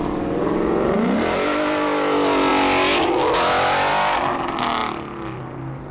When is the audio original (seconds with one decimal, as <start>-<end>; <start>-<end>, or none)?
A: 0.0-5.9